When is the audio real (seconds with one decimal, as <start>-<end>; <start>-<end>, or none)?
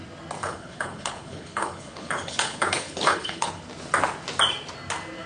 0.0-0.4; 3.6-5.3